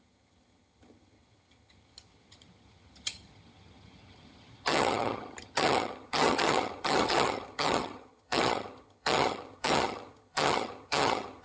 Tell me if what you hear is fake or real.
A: fake